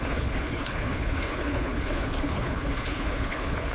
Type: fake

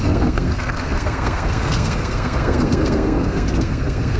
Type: fake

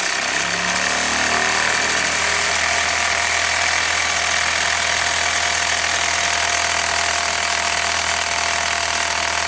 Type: real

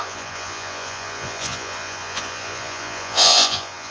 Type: fake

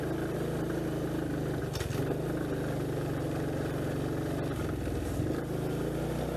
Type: real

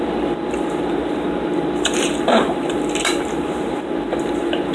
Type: fake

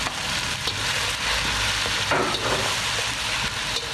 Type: real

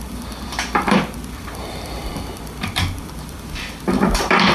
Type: fake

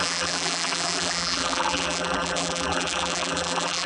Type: fake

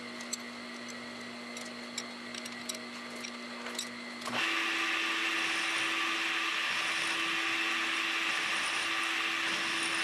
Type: real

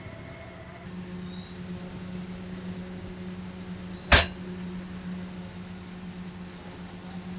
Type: real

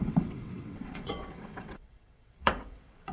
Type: fake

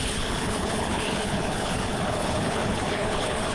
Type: fake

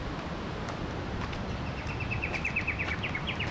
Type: real